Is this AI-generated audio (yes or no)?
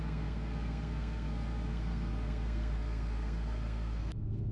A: yes